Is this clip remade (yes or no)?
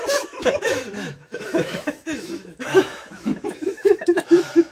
yes